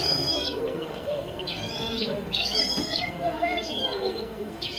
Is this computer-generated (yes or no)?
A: yes